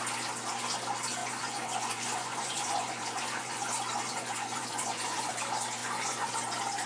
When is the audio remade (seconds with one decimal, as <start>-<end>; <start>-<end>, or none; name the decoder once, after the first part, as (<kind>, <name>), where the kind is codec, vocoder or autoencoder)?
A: 1.2-5.3 (vocoder, Vocos); 5.8-6.3